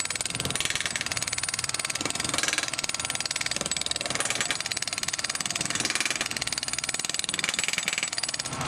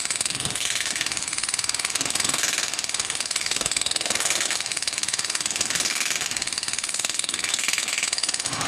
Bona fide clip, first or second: first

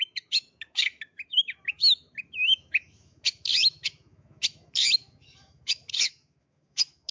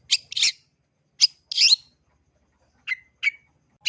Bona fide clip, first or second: second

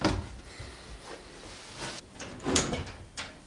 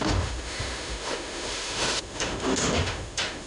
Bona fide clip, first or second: first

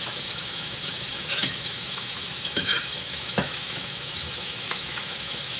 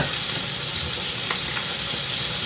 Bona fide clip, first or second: second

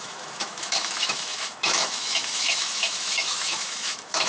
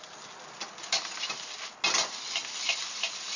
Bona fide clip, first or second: second